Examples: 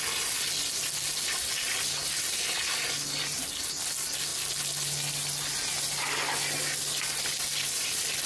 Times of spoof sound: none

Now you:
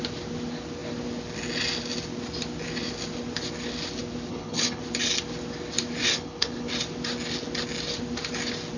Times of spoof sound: 4.3-4.8; 6.1-6.7

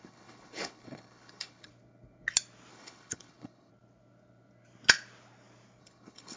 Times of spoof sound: 0.0-1.7; 2.7-3.7; 5.8-6.4

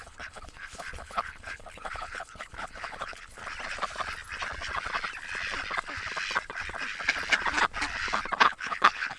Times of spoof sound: 0.0-3.4; 8.4-9.2

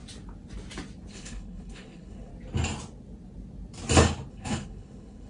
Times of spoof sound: 1.1-2.3; 4.3-5.3